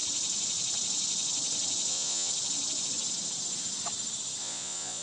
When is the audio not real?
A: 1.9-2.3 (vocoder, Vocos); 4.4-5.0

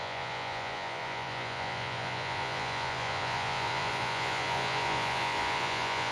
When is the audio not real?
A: 0.0-6.1 (vocoder, Vocos)

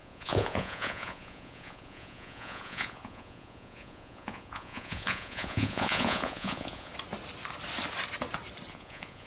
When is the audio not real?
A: 0.0-6.9 (vocoder, Vocos); 8.7-9.3

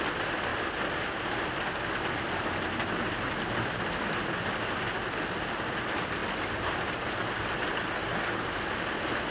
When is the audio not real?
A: none

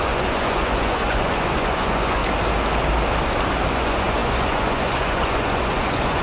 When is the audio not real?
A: 0.0-2.2 (vocoder, Vocos); 3.7-6.2